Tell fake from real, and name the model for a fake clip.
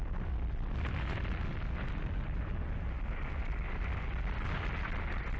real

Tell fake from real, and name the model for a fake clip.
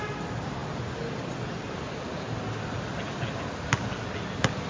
real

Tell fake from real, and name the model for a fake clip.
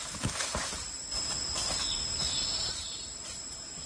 real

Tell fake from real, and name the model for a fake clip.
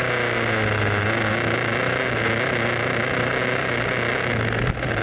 real